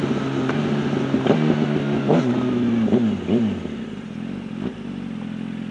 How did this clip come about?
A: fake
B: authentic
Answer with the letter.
B